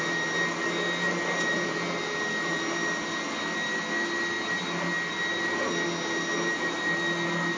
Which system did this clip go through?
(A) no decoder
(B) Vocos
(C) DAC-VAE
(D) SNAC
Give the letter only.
A